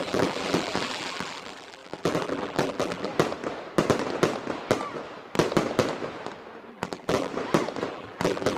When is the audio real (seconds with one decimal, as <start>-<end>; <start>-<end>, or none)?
3.1-6.7; 7.3-7.9